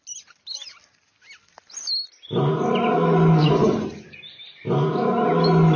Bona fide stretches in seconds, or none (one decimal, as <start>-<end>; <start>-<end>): 0.0-5.8